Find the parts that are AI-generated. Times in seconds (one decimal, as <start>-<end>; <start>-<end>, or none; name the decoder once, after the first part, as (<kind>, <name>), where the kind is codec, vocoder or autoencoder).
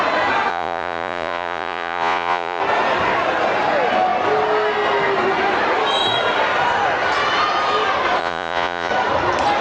0.5-2.6 (vocoder, Vocos); 8.2-8.9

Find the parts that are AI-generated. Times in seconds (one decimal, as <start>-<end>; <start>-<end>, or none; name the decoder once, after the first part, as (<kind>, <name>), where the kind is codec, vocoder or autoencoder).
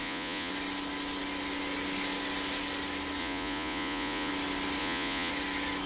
0.0-0.5 (vocoder, Vocos); 3.2-4.3; 4.8-5.3